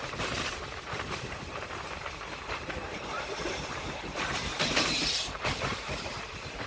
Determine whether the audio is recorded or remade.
remade